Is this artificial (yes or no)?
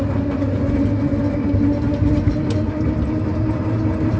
no